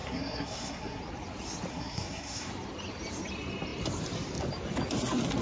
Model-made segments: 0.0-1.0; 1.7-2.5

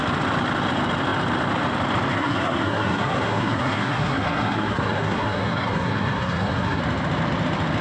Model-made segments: 2.1-6.8